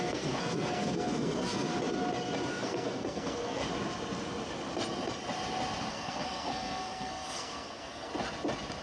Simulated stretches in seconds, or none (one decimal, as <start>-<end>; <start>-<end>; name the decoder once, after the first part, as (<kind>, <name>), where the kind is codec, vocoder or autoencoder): 0.0-1.7 (codec, SNAC); 2.5-3.6; 5.9-8.1